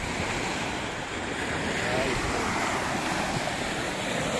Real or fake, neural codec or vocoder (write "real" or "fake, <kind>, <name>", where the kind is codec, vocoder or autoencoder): fake, vocoder, BigVGAN v2